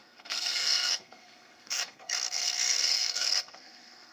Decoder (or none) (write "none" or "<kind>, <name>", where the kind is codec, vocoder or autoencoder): codec, SNAC